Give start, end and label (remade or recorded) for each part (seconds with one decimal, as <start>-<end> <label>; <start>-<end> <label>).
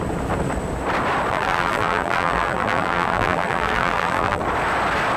0.0-1.3 recorded; 1.3-4.4 remade; 4.4-5.2 recorded